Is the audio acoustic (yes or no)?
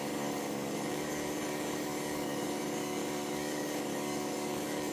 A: no